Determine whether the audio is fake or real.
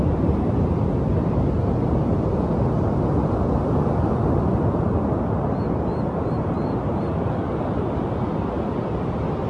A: real